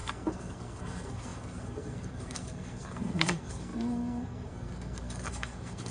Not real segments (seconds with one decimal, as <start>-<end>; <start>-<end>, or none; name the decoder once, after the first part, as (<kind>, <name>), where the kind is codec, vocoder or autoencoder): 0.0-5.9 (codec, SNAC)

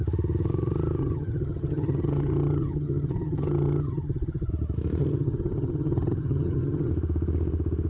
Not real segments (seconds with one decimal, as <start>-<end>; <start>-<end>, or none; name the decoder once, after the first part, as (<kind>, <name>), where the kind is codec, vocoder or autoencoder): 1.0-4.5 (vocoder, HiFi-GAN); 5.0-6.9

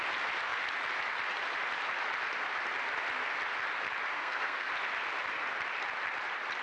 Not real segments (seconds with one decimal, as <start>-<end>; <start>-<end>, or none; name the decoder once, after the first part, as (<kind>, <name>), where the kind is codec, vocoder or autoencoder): 4.1-4.7 (codec, SNAC)